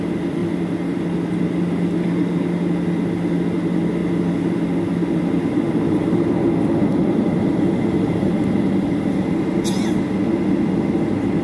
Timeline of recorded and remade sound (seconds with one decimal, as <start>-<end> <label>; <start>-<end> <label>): 0.0-6.9 recorded; 6.9-8.3 remade; 8.3-11.4 recorded